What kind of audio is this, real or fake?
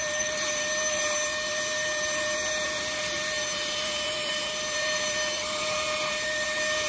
fake